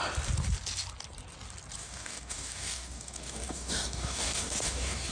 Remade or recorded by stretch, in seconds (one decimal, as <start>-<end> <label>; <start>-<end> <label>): 0.0-1.8 recorded; 1.8-5.1 remade